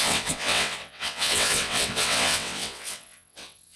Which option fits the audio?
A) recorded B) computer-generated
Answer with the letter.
B